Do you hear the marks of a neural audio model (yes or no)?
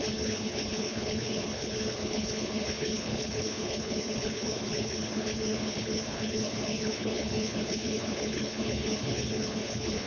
yes